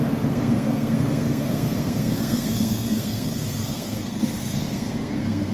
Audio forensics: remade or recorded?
remade